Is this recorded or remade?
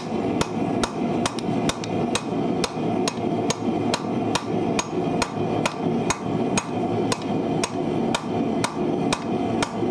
recorded